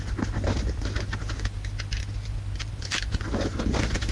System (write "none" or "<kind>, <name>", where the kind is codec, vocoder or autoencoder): none